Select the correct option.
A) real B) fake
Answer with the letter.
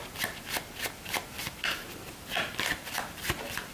A